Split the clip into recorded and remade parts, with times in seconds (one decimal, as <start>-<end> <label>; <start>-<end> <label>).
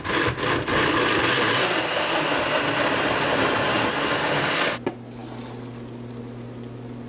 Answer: 0.0-7.1 recorded